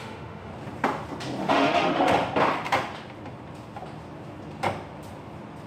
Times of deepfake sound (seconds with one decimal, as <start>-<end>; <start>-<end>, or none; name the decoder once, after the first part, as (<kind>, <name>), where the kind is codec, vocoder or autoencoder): 0.0-0.5 (autoencoder, DAC-VAE); 1.4-2.2